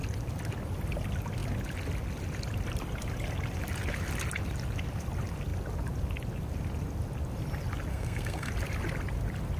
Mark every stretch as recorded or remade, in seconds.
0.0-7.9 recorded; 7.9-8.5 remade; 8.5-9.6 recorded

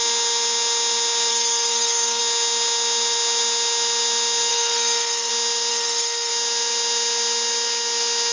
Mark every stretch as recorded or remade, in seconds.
0.0-1.3 recorded; 1.3-2.2 remade; 2.2-4.5 recorded; 4.5-5.3 remade; 5.3-5.7 recorded; 5.7-6.3 remade; 6.3-8.3 recorded

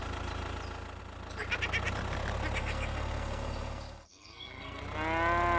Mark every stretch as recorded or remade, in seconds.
0.0-2.6 recorded; 2.6-4.8 remade; 4.8-5.6 recorded